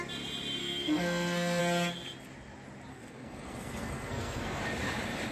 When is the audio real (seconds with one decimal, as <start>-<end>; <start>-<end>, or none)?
0.0-0.6; 1.6-2.9; 4.6-5.3